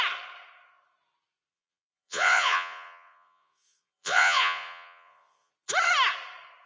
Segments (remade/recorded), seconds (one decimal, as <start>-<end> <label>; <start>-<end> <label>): 0.0-1.5 recorded; 1.5-5.5 remade; 5.5-6.7 recorded